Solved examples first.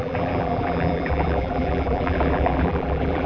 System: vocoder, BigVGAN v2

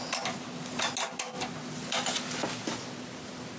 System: none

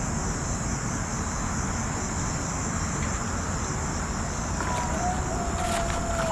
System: none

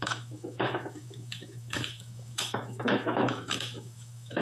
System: autoencoder, DAC-VAE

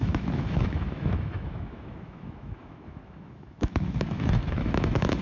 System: autoencoder, DAC-VAE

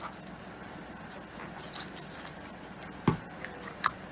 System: none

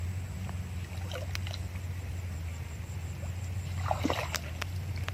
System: none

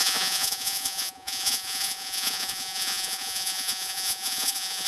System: vocoder, Vocos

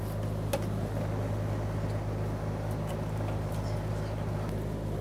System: none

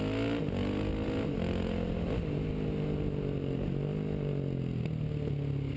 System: none